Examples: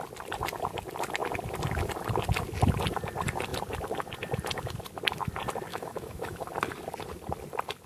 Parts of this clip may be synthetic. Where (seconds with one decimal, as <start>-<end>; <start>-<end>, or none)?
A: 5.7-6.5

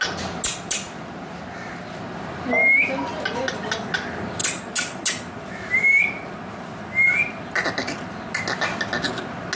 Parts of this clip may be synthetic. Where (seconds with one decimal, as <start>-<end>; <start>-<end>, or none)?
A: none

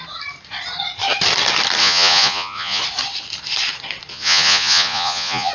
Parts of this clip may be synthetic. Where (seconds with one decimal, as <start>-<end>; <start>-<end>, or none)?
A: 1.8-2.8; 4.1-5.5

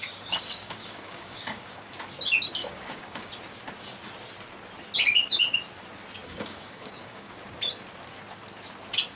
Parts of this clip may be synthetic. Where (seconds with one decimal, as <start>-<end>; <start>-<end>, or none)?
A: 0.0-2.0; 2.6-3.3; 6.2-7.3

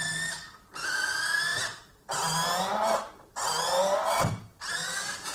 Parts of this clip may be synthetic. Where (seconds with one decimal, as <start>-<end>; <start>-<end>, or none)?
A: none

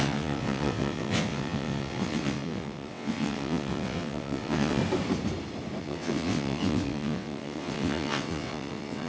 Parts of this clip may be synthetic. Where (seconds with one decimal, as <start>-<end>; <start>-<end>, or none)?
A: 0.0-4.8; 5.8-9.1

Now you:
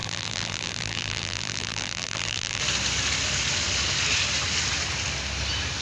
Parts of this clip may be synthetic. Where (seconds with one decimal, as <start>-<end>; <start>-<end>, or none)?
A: 0.0-2.6

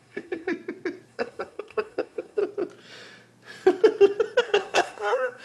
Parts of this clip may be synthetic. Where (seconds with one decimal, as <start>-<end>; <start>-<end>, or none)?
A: 0.0-0.5; 1.1-2.4; 4.4-5.4